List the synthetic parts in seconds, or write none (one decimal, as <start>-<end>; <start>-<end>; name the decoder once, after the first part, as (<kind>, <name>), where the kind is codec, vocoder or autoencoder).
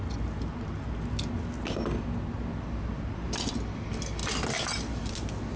none